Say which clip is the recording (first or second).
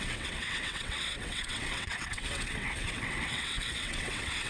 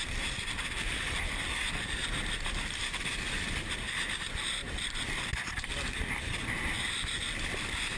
second